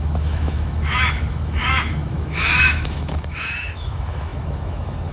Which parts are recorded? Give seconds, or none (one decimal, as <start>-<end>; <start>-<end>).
none